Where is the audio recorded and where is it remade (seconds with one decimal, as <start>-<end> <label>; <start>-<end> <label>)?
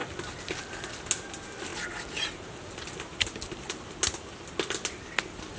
0.0-5.6 recorded